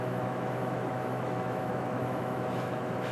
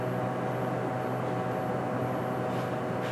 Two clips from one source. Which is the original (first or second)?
second